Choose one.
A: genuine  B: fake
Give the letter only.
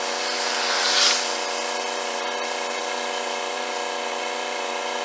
A